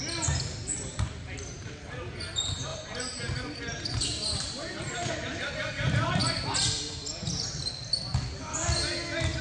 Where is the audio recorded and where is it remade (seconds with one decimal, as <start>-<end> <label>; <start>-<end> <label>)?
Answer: 0.0-2.7 recorded; 2.7-5.1 remade; 5.1-9.4 recorded